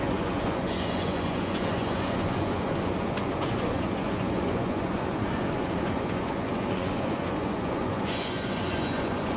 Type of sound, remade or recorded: remade